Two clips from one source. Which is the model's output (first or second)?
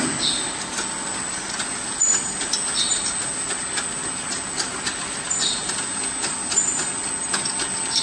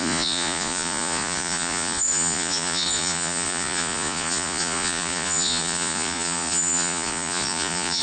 second